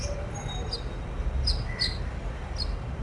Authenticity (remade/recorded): recorded